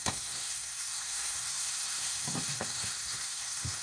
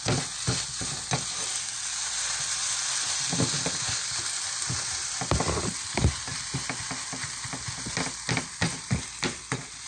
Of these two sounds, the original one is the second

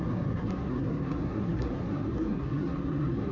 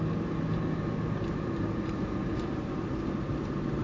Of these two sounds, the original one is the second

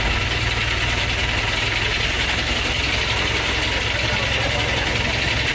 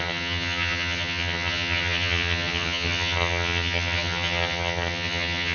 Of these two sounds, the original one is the first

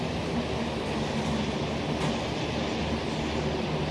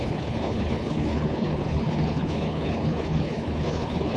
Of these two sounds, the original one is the first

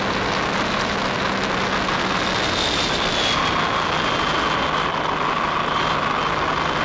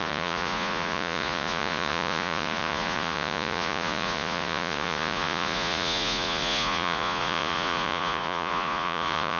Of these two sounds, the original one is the first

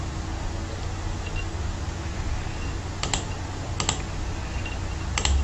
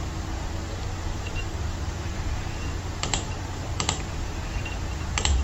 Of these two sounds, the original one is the first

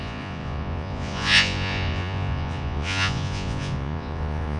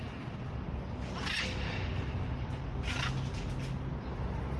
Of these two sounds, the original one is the second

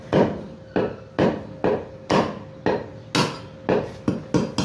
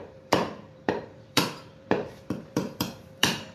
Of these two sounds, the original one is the first